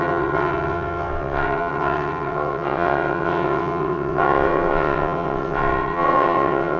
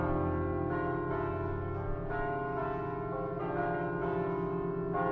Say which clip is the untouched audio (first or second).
second